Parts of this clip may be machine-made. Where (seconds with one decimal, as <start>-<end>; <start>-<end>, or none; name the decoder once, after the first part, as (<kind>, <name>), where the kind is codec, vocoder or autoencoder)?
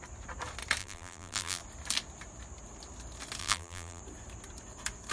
0.8-1.6 (vocoder, BigVGAN v2); 3.4-4.0